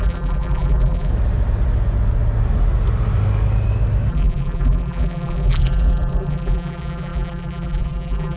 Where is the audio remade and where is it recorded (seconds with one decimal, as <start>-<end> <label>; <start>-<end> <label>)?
0.0-1.1 remade; 1.1-4.1 recorded; 4.1-8.4 remade